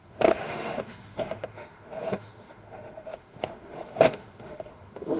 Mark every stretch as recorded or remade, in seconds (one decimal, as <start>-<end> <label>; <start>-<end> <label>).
0.0-5.2 remade